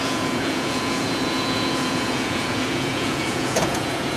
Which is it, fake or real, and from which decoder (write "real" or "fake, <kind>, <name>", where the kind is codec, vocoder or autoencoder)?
fake, vocoder, Vocos